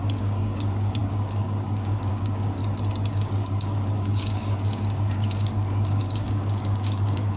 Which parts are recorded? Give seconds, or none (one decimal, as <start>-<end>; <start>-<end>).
2.6-3.1